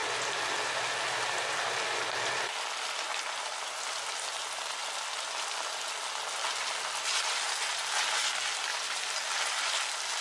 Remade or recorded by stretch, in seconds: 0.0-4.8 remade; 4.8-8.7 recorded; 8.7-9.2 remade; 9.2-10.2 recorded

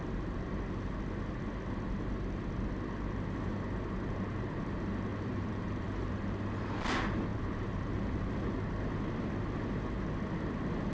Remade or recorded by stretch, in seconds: 0.0-5.1 recorded; 5.1-6.3 remade; 6.3-7.3 recorded; 7.3-8.2 remade; 8.2-10.9 recorded

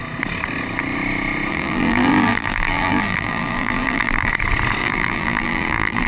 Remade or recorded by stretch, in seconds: 0.0-1.5 recorded; 1.5-4.3 remade; 4.3-4.8 recorded; 4.8-6.1 remade

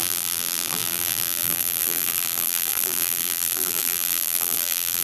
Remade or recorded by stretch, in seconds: 0.0-5.0 remade

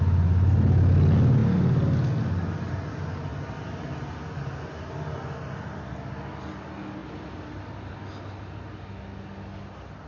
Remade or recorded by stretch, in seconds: 0.0-7.0 recorded; 7.0-7.9 remade; 7.9-10.1 recorded

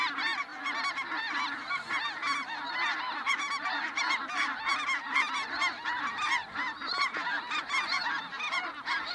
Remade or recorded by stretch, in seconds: 0.0-3.2 recorded; 3.2-4.0 remade; 4.0-9.1 recorded